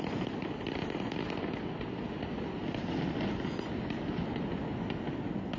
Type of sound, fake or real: real